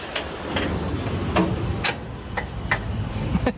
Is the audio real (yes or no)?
yes